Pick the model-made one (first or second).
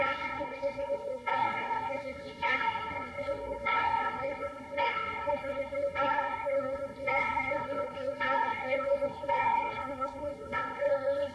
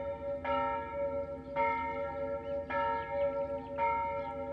first